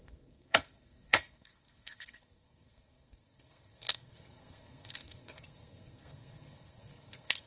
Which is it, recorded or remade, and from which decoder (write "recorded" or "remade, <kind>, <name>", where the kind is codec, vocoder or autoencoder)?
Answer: remade, codec, SNAC